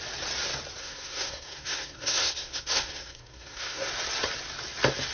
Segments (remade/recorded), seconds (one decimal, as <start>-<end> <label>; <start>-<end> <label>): 0.0-0.8 recorded; 0.8-3.9 remade; 3.9-5.1 recorded

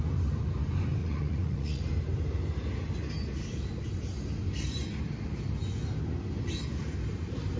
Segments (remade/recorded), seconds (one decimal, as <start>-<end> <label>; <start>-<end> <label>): 0.0-1.0 recorded; 1.0-1.8 remade; 1.8-7.6 recorded

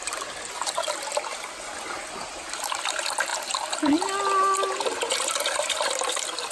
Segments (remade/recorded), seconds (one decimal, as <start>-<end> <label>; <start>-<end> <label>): 0.0-6.5 recorded

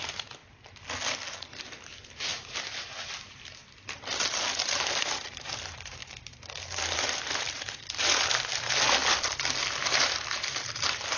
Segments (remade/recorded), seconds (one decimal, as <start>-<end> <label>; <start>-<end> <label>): 0.0-0.4 remade; 0.4-1.3 recorded; 1.3-3.6 remade; 3.6-4.6 recorded; 4.6-9.0 remade; 9.0-9.8 recorded; 9.8-11.2 remade